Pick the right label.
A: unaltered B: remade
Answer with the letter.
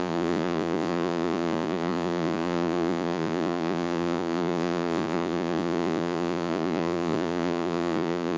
B